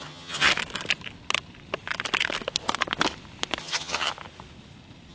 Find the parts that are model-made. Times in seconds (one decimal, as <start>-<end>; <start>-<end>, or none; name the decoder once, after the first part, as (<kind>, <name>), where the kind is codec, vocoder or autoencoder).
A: 0.0-0.5 (vocoder, HiFi-GAN); 3.6-4.1